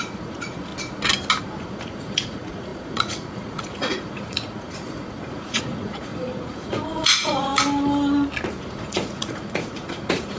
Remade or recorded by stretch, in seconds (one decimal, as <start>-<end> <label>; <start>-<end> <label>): 0.0-0.7 remade; 0.7-1.4 recorded; 1.4-7.5 remade; 7.5-8.6 recorded; 8.6-10.4 remade